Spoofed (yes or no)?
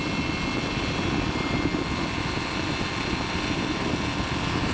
no